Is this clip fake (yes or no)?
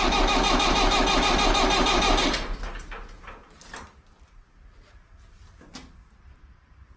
no